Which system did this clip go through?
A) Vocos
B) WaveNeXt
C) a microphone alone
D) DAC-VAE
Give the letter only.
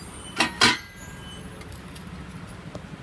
C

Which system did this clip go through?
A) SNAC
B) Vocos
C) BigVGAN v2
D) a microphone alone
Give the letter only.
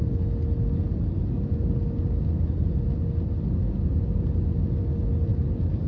D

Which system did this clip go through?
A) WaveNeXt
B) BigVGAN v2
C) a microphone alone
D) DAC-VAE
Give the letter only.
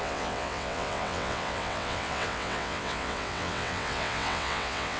A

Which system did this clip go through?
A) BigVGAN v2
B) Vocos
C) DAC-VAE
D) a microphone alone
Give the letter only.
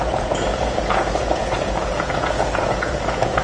B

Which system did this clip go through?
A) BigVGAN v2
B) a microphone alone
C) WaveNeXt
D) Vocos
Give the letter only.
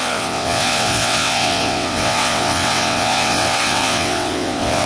C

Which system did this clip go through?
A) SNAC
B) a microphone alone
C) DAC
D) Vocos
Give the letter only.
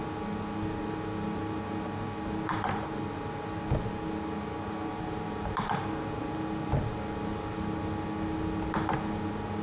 B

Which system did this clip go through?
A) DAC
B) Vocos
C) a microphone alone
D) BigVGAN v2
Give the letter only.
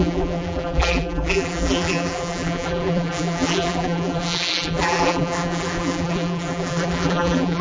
D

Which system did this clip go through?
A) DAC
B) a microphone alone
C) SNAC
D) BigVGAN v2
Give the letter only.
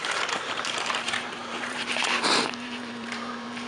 D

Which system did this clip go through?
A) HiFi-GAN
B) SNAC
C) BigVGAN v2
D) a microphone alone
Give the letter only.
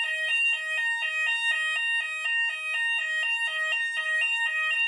D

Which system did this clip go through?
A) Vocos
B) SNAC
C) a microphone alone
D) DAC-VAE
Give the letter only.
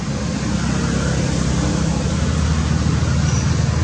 C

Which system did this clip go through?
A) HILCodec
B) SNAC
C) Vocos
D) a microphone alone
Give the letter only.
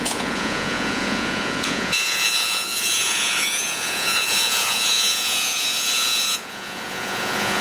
C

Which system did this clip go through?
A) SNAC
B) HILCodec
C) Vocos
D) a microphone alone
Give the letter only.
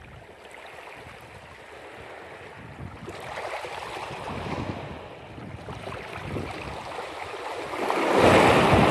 D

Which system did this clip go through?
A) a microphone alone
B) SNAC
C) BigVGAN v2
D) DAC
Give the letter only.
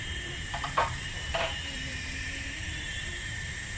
C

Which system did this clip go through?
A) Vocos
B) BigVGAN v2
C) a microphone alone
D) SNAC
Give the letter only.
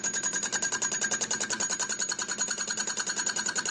C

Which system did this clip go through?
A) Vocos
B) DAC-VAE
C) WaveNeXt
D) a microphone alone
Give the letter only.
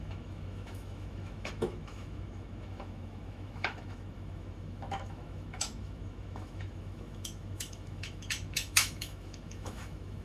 B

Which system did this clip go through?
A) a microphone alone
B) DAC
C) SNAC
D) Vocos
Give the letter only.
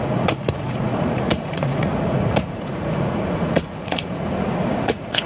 D